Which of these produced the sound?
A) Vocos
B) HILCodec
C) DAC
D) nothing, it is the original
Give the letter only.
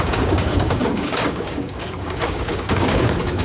C